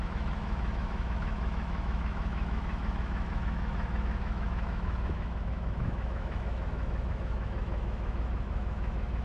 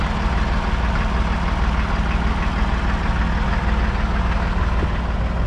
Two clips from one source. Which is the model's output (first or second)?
first